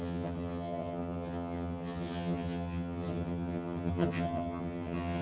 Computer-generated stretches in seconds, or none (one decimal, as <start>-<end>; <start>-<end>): 0.0-5.2